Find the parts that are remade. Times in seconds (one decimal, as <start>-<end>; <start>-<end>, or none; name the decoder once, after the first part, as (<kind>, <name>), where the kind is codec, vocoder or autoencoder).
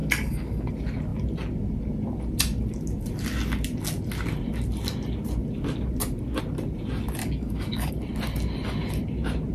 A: 0.0-0.7 (codec, DAC); 7.2-7.9